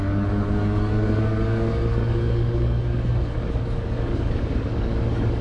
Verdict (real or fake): fake